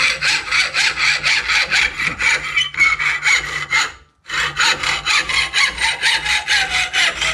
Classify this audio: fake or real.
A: real